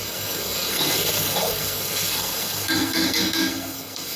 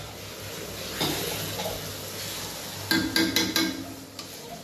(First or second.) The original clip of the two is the second